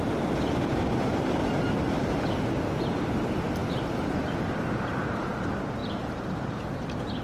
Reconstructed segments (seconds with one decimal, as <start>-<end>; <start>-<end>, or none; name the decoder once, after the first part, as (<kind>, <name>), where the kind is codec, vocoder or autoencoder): none